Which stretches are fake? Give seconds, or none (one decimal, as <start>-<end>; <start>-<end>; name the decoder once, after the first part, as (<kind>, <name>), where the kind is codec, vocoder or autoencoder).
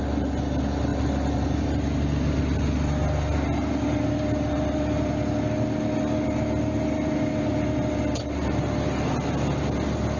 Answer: none